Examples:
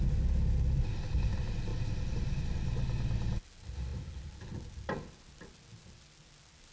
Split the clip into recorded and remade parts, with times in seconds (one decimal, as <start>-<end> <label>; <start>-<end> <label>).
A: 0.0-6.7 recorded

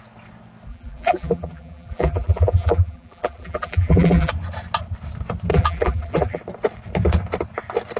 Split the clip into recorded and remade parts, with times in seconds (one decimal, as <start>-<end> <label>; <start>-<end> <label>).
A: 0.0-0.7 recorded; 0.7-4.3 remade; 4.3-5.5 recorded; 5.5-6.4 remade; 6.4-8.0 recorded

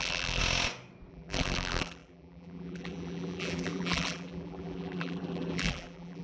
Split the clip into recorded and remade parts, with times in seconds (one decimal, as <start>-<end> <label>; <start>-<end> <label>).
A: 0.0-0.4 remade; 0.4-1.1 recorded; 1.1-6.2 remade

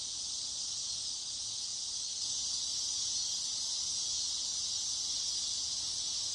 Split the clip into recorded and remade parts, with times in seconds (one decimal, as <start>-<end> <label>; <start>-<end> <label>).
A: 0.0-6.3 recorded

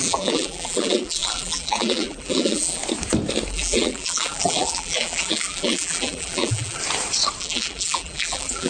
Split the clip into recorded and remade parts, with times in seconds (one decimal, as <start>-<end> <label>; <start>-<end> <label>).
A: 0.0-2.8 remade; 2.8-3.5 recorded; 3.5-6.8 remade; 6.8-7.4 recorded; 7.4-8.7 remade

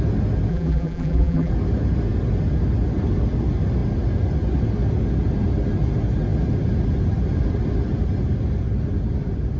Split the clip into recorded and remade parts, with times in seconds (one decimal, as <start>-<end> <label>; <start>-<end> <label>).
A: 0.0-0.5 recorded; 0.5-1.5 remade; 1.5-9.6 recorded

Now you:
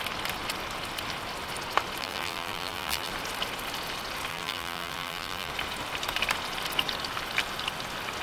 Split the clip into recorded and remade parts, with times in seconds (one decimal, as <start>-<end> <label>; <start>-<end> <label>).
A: 0.0-2.0 recorded; 2.0-3.1 remade; 3.1-4.3 recorded; 4.3-5.5 remade; 5.5-8.2 recorded